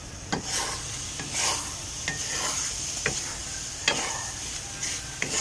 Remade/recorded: recorded